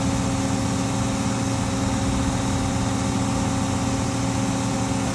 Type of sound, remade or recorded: recorded